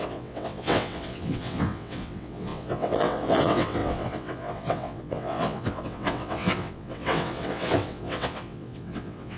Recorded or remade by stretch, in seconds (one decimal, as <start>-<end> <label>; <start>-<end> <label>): 0.0-9.4 remade